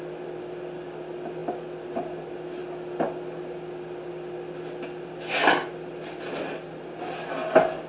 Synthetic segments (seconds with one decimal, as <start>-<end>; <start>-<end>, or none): none